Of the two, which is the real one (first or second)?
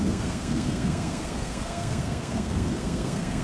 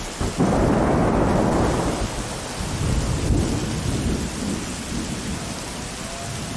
second